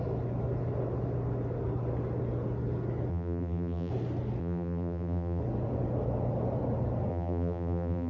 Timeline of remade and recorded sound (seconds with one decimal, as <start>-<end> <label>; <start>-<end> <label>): 0.0-3.1 recorded; 3.1-3.9 remade; 3.9-4.4 recorded; 4.4-5.4 remade; 5.4-7.1 recorded; 7.1-8.1 remade